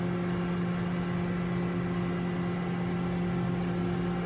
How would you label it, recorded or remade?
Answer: recorded